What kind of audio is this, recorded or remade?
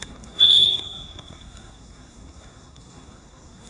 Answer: remade